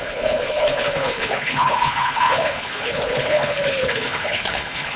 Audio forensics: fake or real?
fake